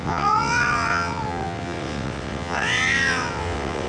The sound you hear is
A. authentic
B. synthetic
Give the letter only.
B